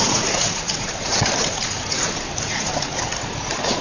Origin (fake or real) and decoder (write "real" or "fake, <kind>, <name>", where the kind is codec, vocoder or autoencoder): fake, vocoder, Vocos